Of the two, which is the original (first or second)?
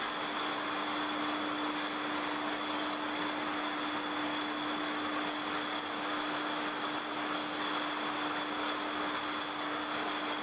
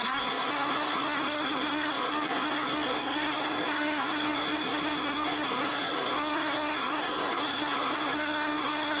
first